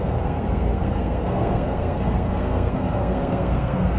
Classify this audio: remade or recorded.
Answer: remade